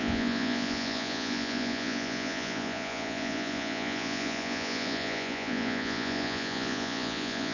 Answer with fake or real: fake